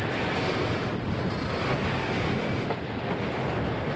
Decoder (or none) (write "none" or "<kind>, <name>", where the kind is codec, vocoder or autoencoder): none